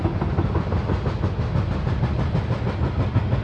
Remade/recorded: recorded